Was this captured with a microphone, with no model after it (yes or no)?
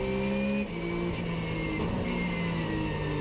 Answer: yes